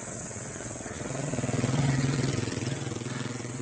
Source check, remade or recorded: remade